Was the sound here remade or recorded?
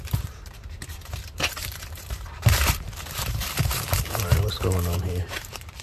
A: remade